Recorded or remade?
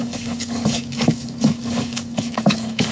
remade